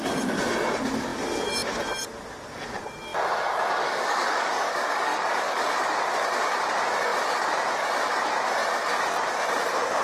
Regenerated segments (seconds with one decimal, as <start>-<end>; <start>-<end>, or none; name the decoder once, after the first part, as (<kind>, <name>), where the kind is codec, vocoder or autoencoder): 3.8-5.6 (codec, DAC)